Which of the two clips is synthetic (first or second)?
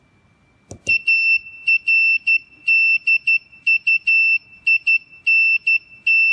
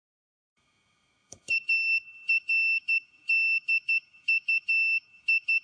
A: second